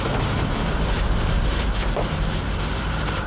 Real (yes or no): yes